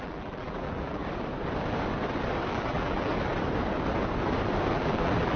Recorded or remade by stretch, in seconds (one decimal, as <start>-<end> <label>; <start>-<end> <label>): 0.0-1.0 remade; 1.0-2.5 recorded; 2.5-3.1 remade; 3.1-4.7 recorded; 4.7-5.4 remade